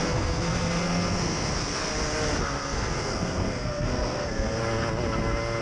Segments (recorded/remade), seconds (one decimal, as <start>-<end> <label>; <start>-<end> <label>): 0.0-1.9 remade; 1.9-2.4 recorded; 2.4-4.6 remade; 4.6-5.6 recorded